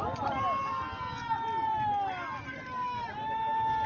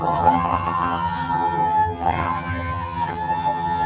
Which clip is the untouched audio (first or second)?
first